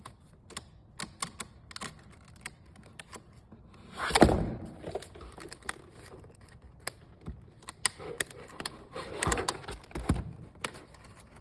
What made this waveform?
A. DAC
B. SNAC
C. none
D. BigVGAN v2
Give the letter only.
C